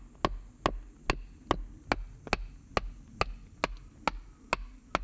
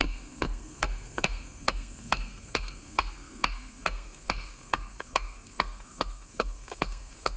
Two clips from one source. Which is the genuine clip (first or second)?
first